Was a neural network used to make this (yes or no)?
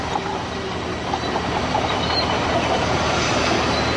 no